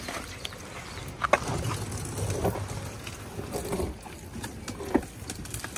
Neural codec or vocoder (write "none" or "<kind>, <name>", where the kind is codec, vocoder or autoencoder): none